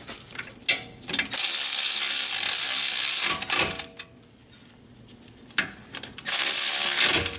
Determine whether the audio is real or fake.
real